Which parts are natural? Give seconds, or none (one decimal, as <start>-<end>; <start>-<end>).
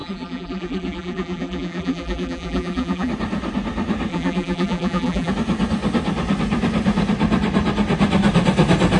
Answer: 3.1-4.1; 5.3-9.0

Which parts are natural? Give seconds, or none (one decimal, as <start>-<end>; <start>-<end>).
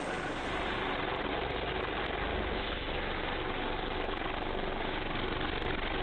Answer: 0.0-6.0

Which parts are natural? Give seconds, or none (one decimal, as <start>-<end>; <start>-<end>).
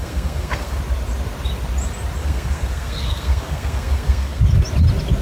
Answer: 0.8-2.2; 4.4-5.2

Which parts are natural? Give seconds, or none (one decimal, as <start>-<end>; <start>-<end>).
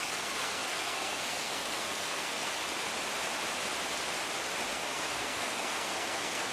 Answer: 2.6-4.7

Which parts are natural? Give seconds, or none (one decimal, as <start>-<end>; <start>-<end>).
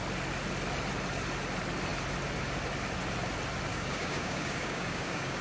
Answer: 0.0-3.7